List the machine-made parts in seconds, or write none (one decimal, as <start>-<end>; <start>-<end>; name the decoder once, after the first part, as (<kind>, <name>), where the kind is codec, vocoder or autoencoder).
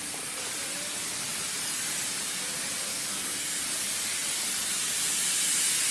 2.9-3.6 (codec, SNAC)